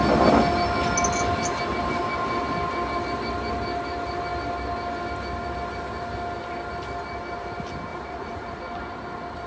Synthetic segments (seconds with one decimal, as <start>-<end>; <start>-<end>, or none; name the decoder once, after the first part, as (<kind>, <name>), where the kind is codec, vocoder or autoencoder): 7.9-8.6 (vocoder, Vocos)